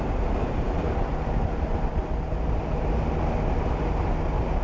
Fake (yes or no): no